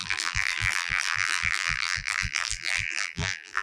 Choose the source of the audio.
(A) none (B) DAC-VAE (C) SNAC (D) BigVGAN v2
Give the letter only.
D